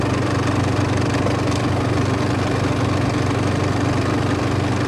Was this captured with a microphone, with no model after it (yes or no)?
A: yes